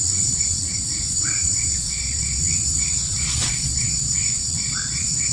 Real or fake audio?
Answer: fake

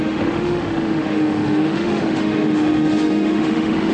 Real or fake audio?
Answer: fake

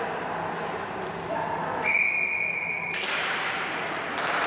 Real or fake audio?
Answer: real